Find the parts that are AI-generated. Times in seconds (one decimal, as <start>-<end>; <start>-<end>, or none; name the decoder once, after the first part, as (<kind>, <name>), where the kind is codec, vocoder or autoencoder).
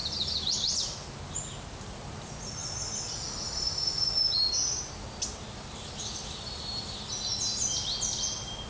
none